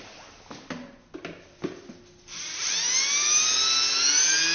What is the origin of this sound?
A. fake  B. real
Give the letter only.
B